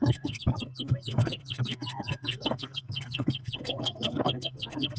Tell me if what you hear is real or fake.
fake